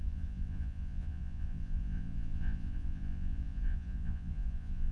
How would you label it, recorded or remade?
remade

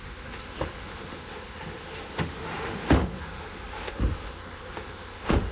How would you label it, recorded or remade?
remade